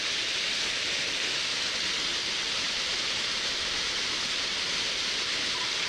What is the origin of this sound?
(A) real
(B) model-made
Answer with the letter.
A